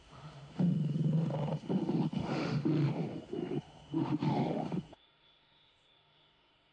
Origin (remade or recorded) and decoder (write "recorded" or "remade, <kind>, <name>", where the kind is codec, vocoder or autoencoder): remade, autoencoder, DAC-VAE